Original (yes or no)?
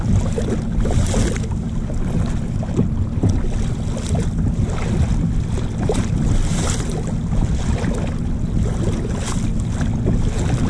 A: yes